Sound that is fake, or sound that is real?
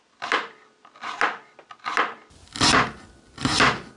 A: real